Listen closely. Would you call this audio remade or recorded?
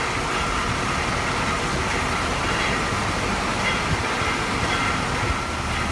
recorded